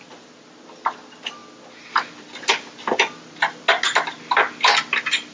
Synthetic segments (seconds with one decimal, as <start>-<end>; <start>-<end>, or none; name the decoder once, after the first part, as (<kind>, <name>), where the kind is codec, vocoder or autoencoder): none